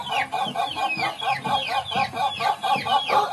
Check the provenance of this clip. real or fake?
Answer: real